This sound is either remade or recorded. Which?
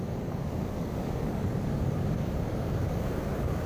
remade